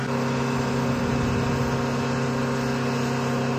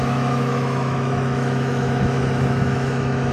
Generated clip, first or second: second